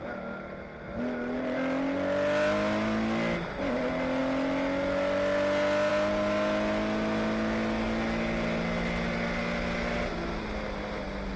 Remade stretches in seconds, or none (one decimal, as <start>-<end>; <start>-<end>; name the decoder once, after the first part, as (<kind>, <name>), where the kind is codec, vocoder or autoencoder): none